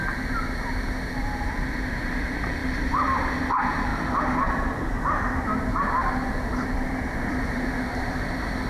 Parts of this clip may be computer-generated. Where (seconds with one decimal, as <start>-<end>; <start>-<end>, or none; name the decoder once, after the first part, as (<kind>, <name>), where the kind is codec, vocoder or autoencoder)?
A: 2.6-3.3 (vocoder, BigVGAN v2); 3.9-8.7